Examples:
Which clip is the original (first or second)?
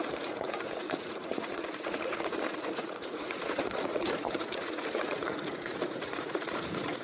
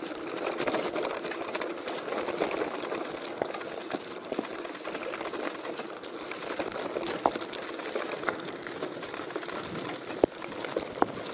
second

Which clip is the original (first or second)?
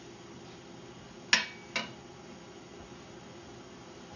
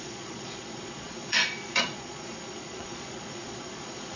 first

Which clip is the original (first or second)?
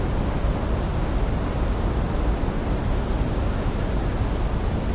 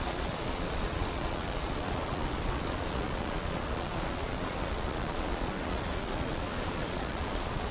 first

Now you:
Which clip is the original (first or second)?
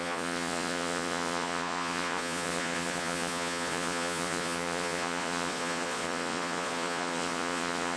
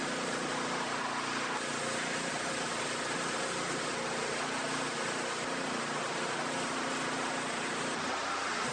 second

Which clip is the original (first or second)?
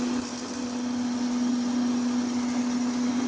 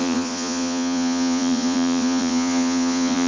first